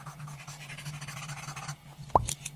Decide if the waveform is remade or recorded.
recorded